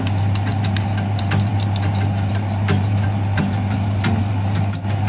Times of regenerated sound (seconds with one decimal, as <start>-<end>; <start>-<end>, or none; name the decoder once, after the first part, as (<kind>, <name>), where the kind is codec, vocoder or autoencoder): none